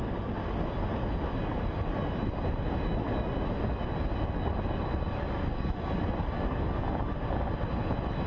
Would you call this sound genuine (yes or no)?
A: yes